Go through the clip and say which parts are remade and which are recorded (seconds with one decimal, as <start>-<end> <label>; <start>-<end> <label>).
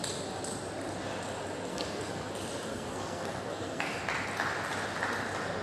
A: 0.0-1.7 recorded; 1.7-2.3 remade; 2.3-2.7 recorded; 2.7-4.0 remade; 4.0-5.6 recorded